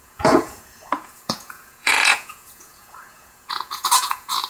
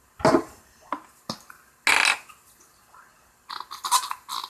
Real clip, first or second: second